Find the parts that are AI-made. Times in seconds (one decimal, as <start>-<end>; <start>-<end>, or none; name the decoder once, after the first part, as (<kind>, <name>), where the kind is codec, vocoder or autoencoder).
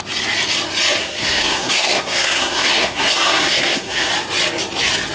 1.0-4.1 (codec, SNAC)